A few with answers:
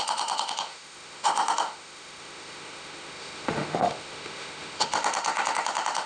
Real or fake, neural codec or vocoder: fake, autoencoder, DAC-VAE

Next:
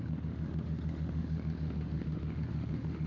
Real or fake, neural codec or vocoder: fake, autoencoder, DAC-VAE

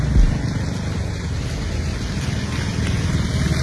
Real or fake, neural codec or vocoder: real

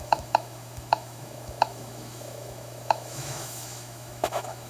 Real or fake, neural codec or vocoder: fake, autoencoder, DAC-VAE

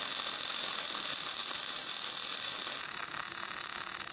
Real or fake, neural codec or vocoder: real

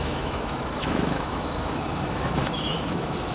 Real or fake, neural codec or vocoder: fake, autoencoder, DAC-VAE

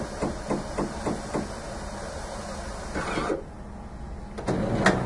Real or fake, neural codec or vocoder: real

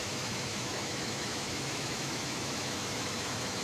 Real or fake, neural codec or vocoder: fake, autoencoder, DAC-VAE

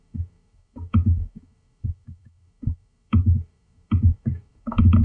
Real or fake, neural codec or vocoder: fake, autoencoder, DAC-VAE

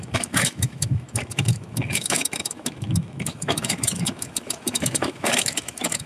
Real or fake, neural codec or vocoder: fake, autoencoder, DAC-VAE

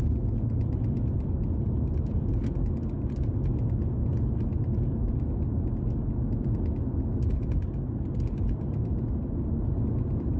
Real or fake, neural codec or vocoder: real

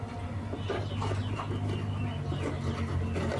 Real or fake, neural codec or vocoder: real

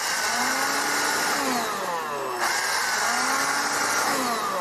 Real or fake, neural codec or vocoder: real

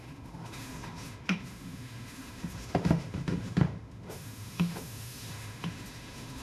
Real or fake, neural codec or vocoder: fake, autoencoder, DAC-VAE